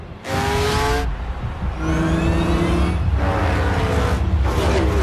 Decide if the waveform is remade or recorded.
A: recorded